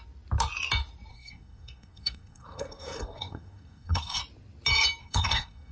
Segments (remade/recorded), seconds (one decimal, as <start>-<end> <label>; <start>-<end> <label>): 0.0-1.1 recorded; 1.1-4.2 remade; 4.2-5.0 recorded; 5.0-5.7 remade

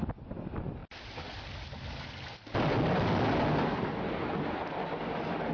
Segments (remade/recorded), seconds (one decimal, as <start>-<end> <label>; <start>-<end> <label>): 0.0-5.5 recorded